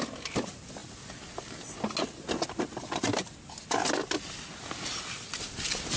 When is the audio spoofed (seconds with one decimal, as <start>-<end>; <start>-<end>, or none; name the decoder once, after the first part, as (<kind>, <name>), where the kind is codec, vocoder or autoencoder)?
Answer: none